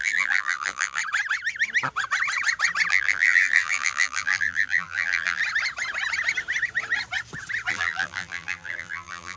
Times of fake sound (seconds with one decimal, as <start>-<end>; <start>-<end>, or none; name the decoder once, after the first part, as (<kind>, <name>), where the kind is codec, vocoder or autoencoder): 0.0-1.0 (vocoder, BigVGAN v2); 2.9-5.4; 7.7-9.4